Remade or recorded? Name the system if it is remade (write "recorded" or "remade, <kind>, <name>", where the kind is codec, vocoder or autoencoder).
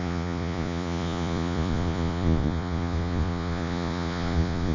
remade, vocoder, Vocos